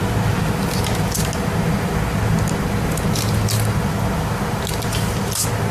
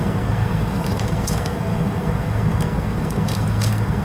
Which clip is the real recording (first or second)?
first